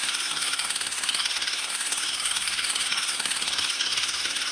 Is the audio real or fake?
fake